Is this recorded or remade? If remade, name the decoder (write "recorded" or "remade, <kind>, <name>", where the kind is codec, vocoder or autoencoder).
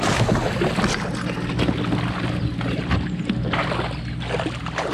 recorded